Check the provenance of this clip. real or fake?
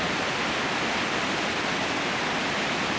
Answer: real